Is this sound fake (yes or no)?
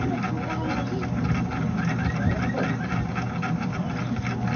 no